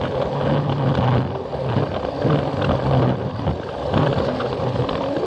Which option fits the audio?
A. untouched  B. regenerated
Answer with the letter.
A